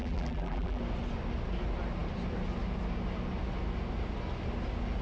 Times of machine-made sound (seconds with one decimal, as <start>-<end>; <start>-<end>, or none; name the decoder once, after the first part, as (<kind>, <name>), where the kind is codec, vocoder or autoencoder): 0.0-0.8 (vocoder, BigVGAN v2)